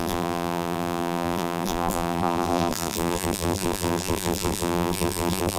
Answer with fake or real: fake